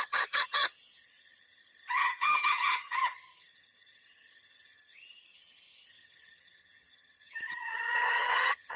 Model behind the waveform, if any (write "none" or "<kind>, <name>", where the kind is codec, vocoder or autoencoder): vocoder, HiFi-GAN